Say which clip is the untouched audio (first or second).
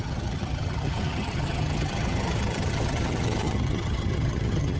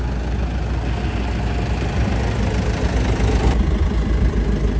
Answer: second